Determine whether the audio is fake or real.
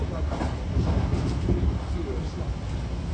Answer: real